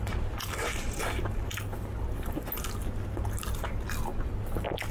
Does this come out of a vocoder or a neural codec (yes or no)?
no